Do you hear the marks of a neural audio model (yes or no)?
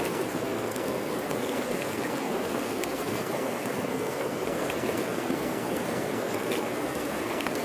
yes